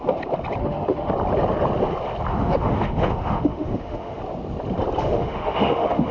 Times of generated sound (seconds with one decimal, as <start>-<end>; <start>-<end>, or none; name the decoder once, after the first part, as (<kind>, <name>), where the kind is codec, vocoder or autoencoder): 0.6-1.1 (autoencoder, DAC-VAE); 2.3-4.2; 5.0-6.1